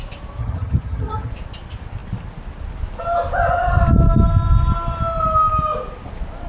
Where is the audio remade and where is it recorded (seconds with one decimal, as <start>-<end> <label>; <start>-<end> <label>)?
0.0-0.4 recorded; 0.4-1.3 remade; 1.3-6.5 recorded